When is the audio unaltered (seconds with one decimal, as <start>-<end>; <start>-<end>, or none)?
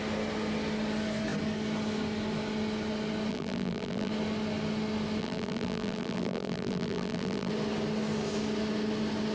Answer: 0.0-3.3; 4.1-5.2; 7.5-9.3